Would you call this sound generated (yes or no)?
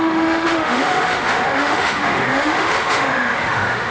yes